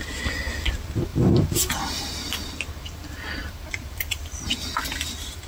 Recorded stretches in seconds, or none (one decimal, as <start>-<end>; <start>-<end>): 0.0-1.1; 1.7-3.0; 4.2-5.5